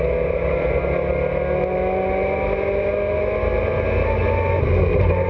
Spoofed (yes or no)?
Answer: no